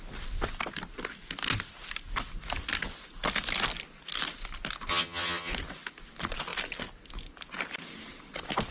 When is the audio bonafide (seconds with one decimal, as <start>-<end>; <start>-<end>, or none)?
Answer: 0.0-4.9; 5.5-8.7